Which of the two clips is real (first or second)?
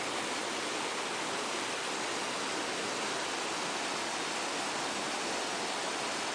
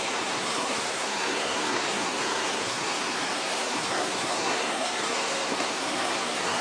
first